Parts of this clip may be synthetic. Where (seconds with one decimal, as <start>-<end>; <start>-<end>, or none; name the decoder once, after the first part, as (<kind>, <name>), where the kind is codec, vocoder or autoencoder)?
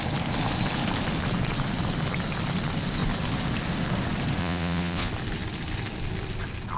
4.4-5.1 (vocoder, Vocos)